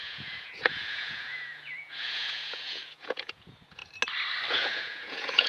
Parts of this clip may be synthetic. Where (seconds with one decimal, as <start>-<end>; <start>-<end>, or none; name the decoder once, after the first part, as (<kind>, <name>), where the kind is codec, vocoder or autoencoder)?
0.0-3.8 (vocoder, Vocos); 4.5-5.5